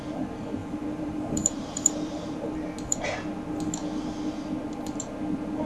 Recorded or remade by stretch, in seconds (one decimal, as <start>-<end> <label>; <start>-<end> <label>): 0.0-0.6 recorded; 0.6-2.6 remade; 2.6-5.7 recorded